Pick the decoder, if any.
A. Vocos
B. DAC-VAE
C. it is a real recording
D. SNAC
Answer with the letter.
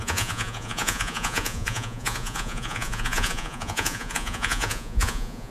A